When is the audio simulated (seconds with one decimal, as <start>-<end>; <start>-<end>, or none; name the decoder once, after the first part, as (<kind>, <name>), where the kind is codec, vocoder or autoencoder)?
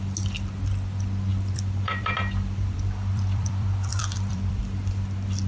1.3-4.6 (vocoder, BigVGAN v2)